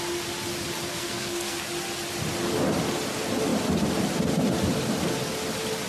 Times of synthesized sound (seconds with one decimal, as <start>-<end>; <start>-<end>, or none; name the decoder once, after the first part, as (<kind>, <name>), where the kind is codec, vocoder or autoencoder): 0.9-1.6 (codec, SNAC)

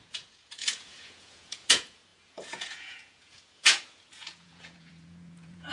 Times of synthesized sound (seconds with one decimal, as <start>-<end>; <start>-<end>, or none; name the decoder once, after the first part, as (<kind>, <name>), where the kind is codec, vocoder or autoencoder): 0.0-5.7 (vocoder, Vocos)

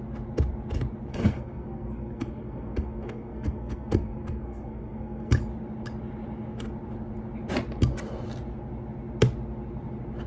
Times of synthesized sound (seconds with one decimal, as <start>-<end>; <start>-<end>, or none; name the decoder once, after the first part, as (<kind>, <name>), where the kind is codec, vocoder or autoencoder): 1.1-5.3 (codec, SNAC)